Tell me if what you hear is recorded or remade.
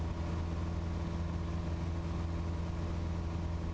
recorded